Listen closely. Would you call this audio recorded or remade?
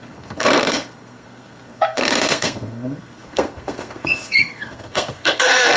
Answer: remade